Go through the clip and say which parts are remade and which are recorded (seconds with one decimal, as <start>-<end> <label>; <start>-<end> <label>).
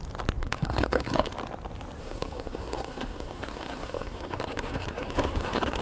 0.0-0.4 recorded; 0.4-1.3 remade; 1.3-2.0 recorded; 2.0-5.8 remade